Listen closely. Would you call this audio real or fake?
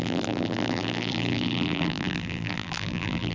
fake